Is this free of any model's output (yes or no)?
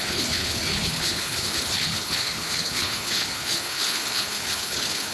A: no